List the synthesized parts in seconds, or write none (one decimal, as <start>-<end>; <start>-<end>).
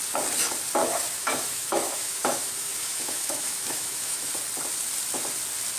0.8-4.3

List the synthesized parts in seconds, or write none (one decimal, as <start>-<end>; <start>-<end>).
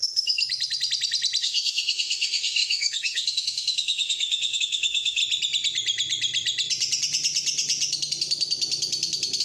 0.0-0.4; 1.4-5.2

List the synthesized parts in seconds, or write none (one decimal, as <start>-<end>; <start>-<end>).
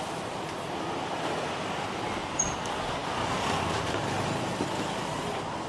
none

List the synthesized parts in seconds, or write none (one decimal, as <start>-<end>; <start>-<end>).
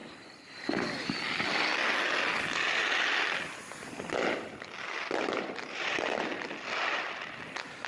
none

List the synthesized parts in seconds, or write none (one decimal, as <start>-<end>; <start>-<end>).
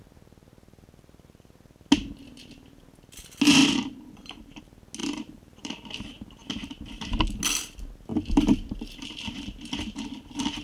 3.6-4.6; 5.0-5.9; 8.1-9.6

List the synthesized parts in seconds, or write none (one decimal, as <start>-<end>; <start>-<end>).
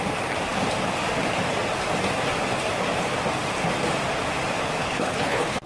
4.8-5.7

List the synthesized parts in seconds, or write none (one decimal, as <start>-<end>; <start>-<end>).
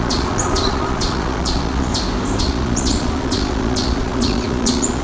0.0-1.9; 2.4-5.0